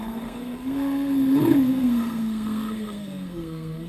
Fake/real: fake